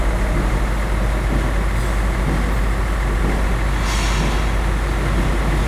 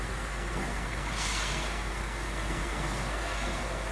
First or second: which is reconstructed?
second